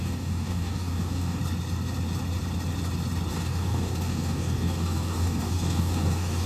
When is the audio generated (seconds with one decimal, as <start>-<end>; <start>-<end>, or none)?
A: 0.0-1.4; 3.3-6.5